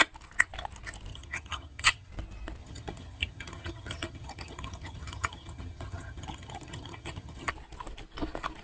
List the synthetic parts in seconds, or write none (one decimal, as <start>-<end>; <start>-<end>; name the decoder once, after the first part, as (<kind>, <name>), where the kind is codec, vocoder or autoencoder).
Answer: 1.1-2.1 (vocoder, HiFi-GAN); 2.6-7.5